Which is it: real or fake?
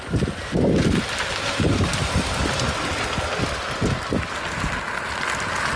real